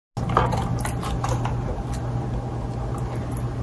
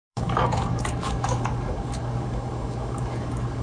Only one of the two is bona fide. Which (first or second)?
first